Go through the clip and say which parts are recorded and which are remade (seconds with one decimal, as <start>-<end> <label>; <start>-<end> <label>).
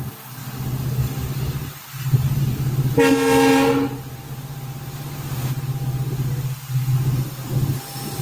0.0-8.2 recorded